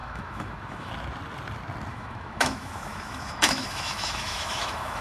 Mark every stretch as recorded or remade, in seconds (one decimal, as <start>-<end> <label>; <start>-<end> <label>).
0.0-0.9 remade; 0.9-1.9 recorded; 1.9-5.0 remade